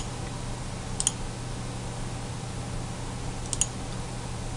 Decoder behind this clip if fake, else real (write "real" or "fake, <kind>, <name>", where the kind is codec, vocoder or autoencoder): real